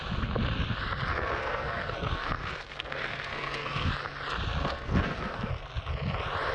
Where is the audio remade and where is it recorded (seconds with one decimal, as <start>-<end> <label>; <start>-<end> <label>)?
0.0-1.1 recorded; 1.1-3.9 remade; 3.9-4.6 recorded; 4.6-5.5 remade; 5.5-6.5 recorded